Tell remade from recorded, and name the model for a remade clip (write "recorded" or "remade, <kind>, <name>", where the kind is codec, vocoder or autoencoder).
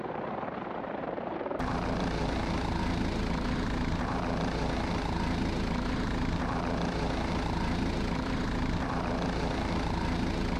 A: remade, vocoder, BigVGAN v2